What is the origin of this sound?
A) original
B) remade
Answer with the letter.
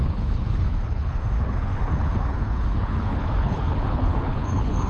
B